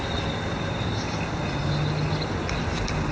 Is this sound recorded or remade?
recorded